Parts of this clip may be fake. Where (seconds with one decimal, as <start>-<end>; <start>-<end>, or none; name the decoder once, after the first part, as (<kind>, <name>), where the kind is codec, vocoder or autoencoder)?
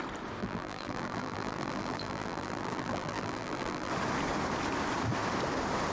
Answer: 0.4-3.9 (vocoder, BigVGAN v2)